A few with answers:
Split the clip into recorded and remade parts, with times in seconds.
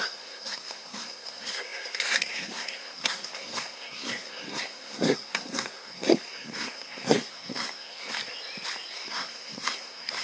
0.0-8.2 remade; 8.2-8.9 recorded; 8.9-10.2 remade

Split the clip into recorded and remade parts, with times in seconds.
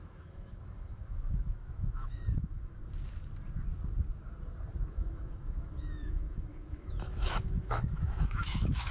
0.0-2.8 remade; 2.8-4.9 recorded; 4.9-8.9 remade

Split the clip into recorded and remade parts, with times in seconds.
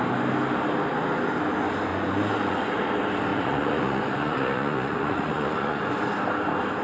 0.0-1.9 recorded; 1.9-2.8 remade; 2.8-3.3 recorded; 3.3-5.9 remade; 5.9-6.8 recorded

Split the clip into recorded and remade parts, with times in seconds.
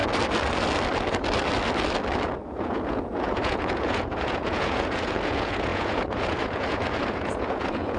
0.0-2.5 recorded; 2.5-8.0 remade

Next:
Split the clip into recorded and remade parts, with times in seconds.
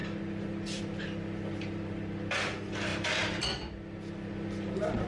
0.0-2.9 recorded; 2.9-4.1 remade; 4.1-5.1 recorded